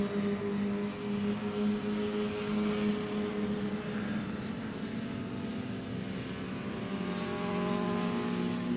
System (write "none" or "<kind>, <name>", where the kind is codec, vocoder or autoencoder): none